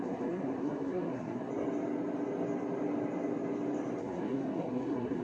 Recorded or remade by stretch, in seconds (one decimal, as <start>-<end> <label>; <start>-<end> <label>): 0.0-1.5 remade; 1.5-4.0 recorded; 4.0-5.2 remade